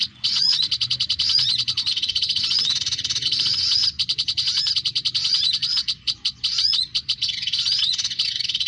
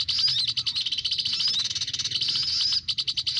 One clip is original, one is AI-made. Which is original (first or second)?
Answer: second